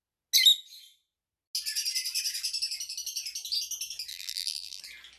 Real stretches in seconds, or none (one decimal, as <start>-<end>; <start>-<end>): 0.0-4.1; 4.8-5.2